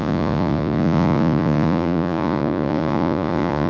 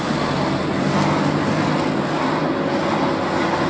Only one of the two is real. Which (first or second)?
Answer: second